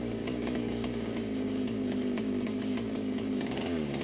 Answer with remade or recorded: remade